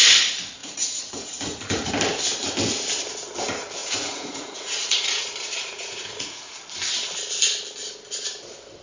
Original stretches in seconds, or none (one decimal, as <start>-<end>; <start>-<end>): 0.0-0.6; 1.9-3.8; 6.6-8.8